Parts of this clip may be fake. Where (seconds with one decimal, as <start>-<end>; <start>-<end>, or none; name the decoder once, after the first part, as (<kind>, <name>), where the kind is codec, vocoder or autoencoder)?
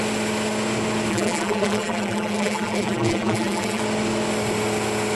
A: 1.1-3.8 (vocoder, BigVGAN v2)